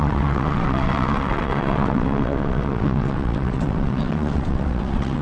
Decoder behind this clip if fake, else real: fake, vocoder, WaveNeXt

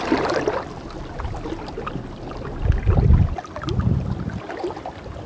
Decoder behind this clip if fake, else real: real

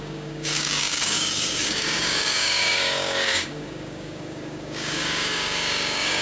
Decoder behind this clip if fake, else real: fake, codec, DAC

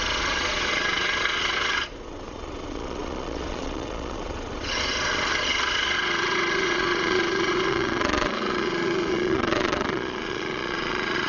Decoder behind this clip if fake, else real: fake, vocoder, Vocos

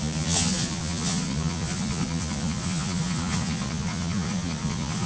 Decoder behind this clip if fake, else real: fake, vocoder, Vocos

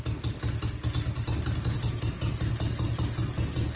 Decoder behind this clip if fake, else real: real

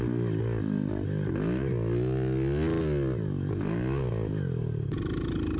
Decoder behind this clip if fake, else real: real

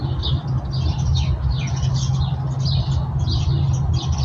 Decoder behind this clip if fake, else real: real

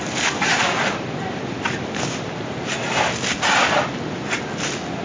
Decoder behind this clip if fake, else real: real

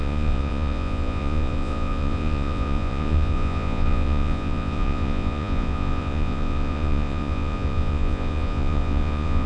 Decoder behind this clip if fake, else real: fake, vocoder, Vocos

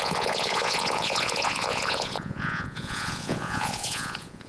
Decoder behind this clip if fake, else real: fake, vocoder, Vocos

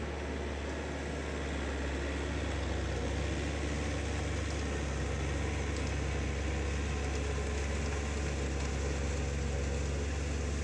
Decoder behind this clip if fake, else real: real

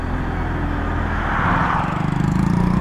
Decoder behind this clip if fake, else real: real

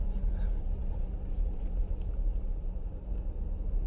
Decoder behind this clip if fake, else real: real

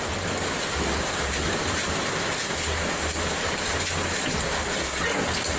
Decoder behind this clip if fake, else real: real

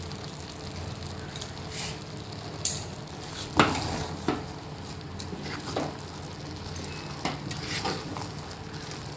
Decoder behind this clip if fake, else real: real